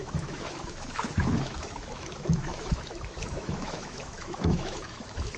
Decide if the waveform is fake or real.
fake